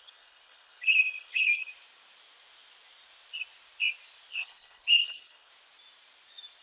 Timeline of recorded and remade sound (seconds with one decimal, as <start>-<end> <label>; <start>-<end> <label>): 0.0-1.7 remade; 1.7-4.3 recorded; 4.3-5.5 remade; 5.5-6.6 recorded